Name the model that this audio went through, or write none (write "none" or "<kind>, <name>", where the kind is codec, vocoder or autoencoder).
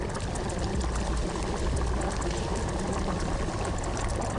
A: none